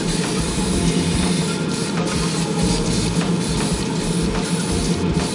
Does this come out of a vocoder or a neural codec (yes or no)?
no